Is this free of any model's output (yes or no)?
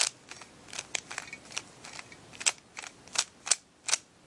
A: yes